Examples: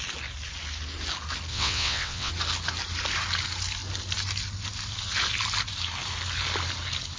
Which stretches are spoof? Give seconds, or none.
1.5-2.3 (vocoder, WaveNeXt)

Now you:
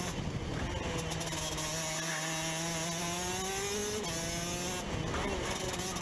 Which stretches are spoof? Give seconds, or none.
none

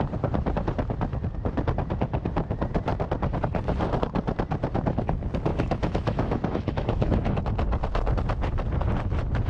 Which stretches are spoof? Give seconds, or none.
5.5-7.4 (autoencoder, DAC-VAE)

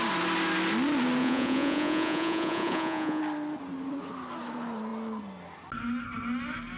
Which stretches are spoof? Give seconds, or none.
1.2-3.2 (vocoder, Vocos)

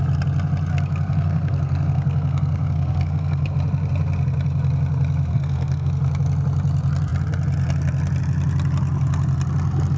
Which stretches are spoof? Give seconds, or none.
0.7-3.5 (codec, SNAC); 5.3-5.9

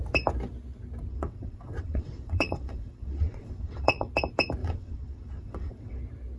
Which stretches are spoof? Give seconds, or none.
1.1-4.1 (vocoder, WaveNeXt); 4.6-6.0

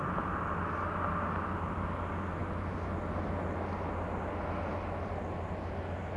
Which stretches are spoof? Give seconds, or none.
none

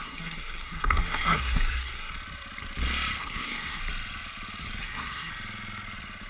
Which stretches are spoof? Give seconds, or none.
0.0-2.1 (codec, SNAC); 3.2-3.8; 4.8-5.3